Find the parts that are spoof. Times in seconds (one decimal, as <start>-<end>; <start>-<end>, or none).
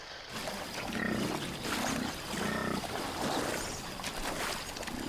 none